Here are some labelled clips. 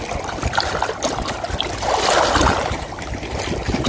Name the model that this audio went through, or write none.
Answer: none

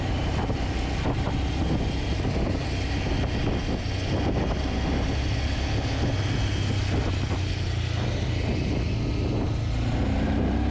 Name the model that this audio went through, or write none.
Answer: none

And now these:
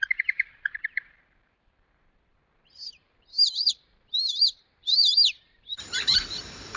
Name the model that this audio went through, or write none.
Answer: vocoder, BigVGAN v2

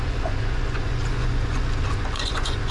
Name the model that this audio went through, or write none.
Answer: vocoder, Vocos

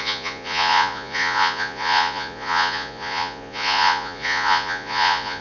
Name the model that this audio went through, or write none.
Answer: vocoder, Vocos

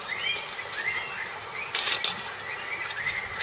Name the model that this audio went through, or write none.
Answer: none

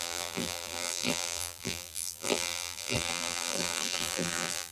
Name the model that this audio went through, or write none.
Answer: vocoder, BigVGAN v2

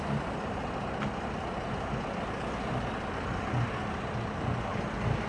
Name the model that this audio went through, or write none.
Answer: none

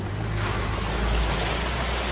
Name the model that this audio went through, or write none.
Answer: none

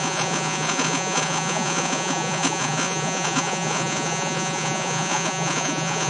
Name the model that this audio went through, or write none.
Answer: vocoder, Vocos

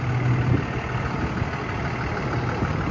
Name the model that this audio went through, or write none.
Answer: none